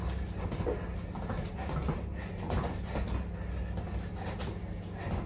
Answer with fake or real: real